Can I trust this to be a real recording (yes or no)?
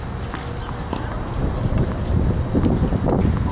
yes